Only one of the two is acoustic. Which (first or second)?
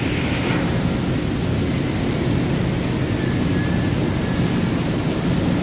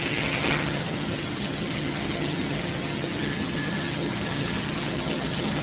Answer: first